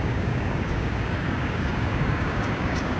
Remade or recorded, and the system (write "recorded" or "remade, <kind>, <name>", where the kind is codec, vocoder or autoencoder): remade, codec, DAC